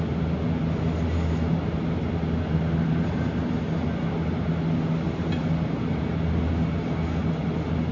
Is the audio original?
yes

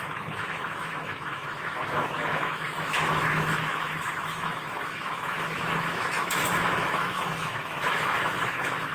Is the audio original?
no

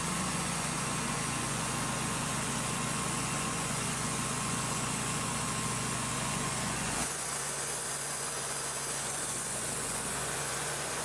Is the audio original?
no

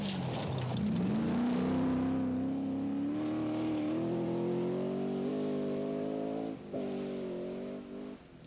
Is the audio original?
yes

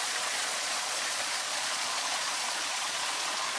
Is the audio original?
no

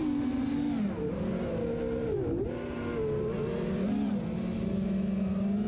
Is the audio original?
yes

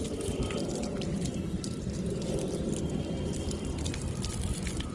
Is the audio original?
yes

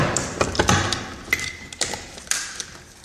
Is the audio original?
yes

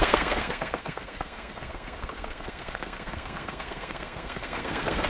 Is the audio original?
no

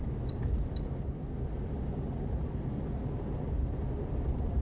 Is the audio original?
yes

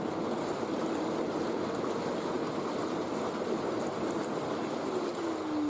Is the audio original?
yes